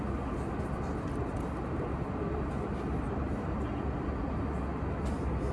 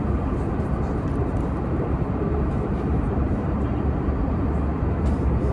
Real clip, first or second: first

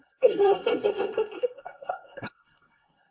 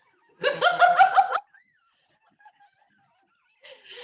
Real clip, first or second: second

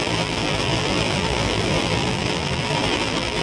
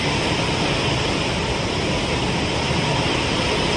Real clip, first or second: second